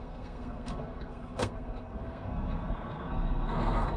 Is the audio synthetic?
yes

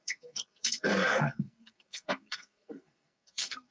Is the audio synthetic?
yes